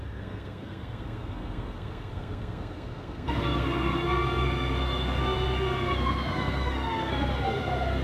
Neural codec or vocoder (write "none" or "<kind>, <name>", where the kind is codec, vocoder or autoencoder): codec, SNAC